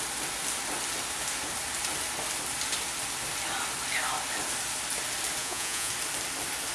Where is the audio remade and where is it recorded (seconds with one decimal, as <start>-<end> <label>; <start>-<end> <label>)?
0.0-5.4 recorded; 5.4-5.9 remade; 5.9-6.7 recorded